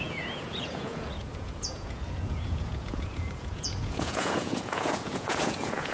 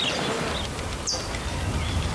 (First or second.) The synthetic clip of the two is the first